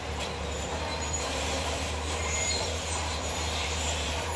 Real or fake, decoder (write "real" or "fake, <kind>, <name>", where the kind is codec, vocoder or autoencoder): fake, vocoder, BigVGAN v2